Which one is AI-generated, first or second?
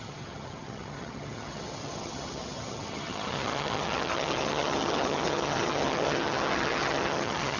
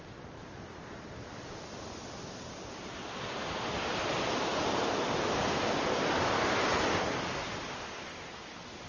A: first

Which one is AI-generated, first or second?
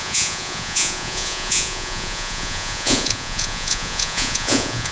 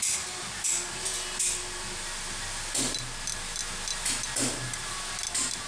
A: first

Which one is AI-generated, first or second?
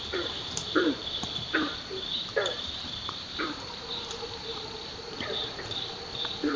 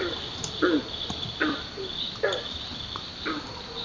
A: first